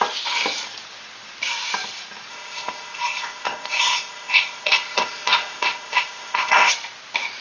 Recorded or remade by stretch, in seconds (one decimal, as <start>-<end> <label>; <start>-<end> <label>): 0.0-2.3 recorded; 2.3-6.7 remade; 6.7-7.4 recorded